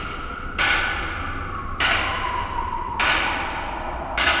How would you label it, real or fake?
real